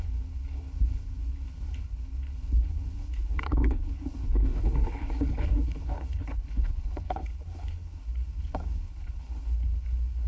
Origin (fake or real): fake